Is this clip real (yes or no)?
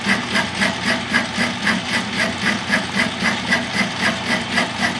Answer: yes